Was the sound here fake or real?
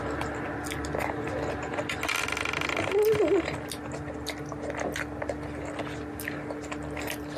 real